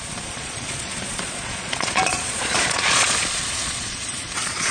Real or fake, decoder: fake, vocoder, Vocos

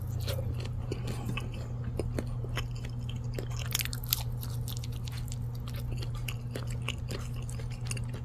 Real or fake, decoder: real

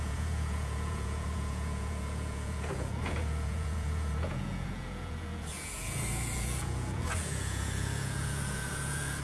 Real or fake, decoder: fake, vocoder, Vocos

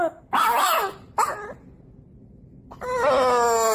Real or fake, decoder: real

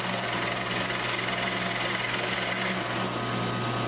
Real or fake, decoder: real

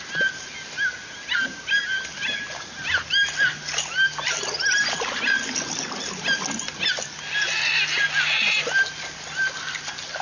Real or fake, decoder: real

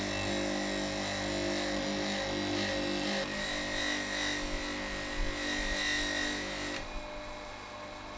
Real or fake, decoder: real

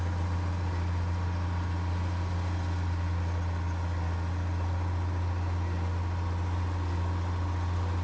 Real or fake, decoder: real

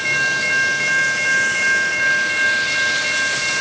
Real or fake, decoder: real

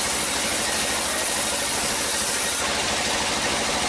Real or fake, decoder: real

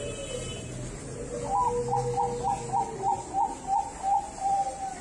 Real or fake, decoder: real